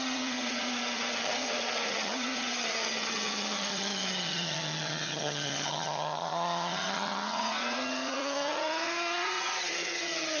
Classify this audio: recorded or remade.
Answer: remade